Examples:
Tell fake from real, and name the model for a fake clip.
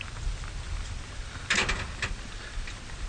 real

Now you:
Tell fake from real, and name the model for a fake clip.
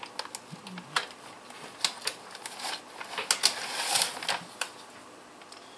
real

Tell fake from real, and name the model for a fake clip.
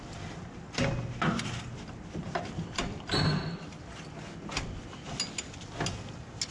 real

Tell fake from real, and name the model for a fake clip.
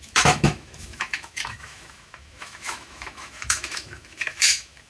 fake, autoencoder, DAC-VAE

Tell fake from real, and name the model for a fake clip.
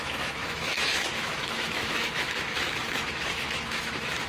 fake, autoencoder, DAC-VAE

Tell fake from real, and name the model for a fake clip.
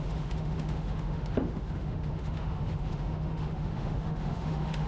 fake, autoencoder, DAC-VAE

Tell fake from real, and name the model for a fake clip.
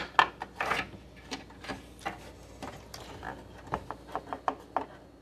real